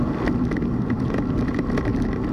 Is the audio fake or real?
real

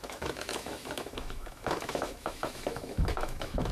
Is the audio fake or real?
fake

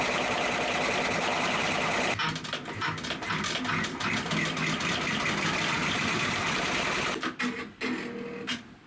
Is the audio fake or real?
real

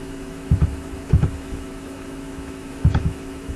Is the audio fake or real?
fake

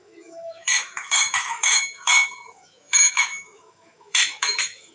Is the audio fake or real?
fake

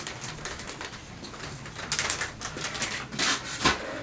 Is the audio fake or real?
real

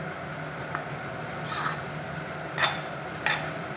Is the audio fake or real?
real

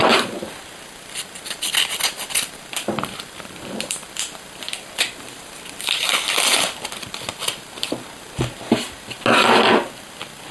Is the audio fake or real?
real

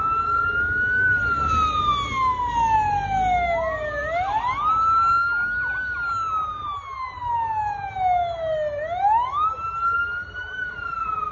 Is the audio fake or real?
real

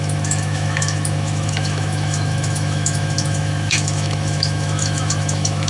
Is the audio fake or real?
fake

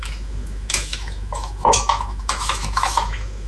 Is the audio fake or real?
fake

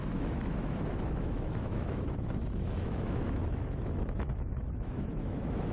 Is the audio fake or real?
fake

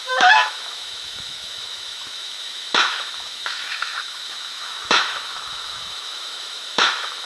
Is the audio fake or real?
fake